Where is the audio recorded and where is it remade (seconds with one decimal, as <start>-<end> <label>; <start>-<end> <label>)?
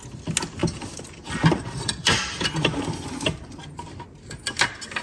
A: 0.0-0.6 recorded; 0.6-3.6 remade; 3.6-5.0 recorded